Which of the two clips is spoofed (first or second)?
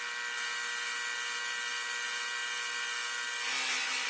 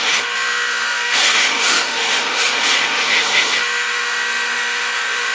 second